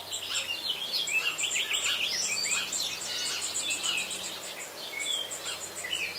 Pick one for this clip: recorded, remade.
recorded